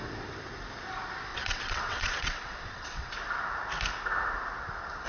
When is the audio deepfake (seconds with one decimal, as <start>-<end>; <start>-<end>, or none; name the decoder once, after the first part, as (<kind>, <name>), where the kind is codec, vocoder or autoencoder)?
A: 1.3-3.1 (vocoder, WaveNeXt)